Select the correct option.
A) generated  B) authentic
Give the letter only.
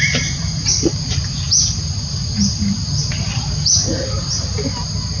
B